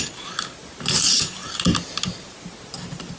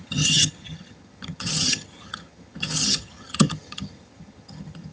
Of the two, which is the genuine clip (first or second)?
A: first